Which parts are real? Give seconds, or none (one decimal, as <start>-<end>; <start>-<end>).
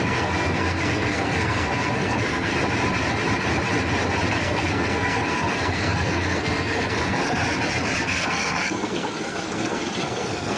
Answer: 2.5-4.3; 7.4-8.0